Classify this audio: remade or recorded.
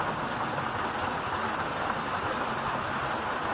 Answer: recorded